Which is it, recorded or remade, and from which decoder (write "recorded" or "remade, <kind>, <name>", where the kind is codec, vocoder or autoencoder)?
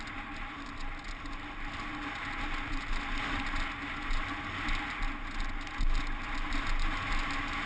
recorded